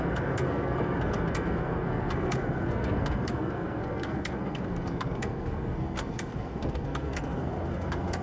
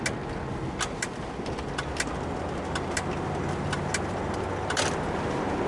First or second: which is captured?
second